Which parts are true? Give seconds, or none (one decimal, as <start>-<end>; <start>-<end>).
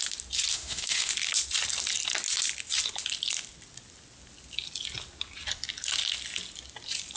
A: 0.0-0.5; 1.1-7.2